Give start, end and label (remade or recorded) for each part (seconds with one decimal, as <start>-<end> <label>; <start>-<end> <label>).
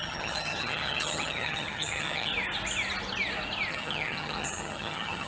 0.0-2.3 remade; 2.3-3.7 recorded; 3.7-5.3 remade